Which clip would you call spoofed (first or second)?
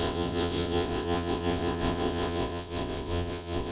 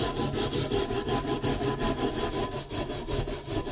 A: first